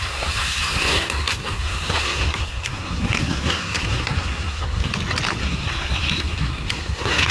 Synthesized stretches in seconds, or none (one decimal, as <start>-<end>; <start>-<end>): 0.0-4.9; 5.4-7.3